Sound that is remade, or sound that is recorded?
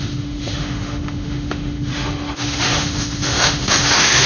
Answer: remade